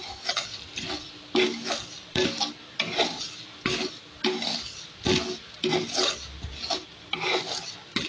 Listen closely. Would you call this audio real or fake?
real